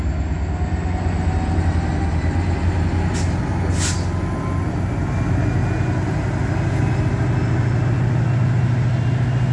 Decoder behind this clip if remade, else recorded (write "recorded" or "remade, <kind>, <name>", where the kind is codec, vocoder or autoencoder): recorded